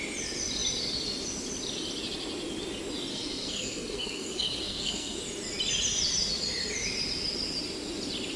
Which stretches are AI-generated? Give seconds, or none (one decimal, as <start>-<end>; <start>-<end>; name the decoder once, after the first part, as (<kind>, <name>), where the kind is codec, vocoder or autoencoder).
3.1-5.2 (codec, SNAC)